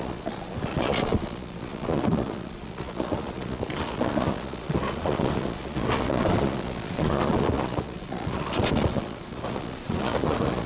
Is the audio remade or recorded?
remade